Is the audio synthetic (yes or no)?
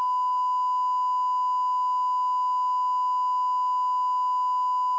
no